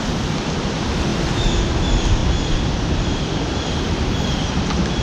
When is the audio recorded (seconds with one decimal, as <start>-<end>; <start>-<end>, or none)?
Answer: 0.0-5.0